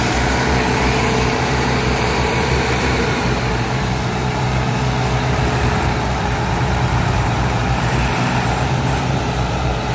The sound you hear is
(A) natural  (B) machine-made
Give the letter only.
B